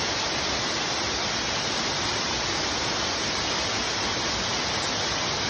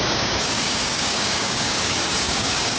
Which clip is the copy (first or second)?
second